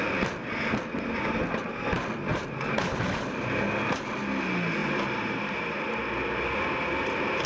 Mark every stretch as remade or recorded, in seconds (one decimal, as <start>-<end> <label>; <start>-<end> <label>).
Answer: 0.0-2.3 recorded; 2.3-3.7 remade; 3.7-4.8 recorded; 4.8-5.8 remade; 5.8-7.5 recorded